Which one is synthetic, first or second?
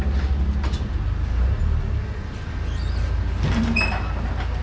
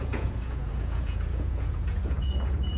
second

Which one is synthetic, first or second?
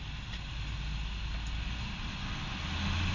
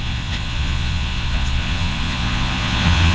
second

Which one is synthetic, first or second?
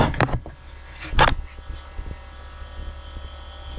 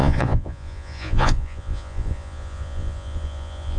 second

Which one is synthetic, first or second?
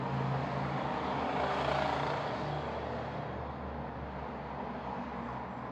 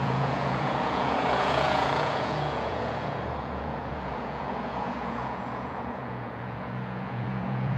second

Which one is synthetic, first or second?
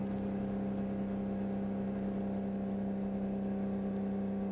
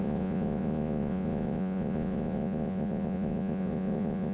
second